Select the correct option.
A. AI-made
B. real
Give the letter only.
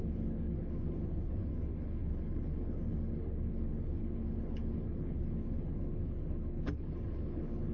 A